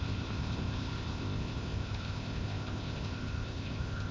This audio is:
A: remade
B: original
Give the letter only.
A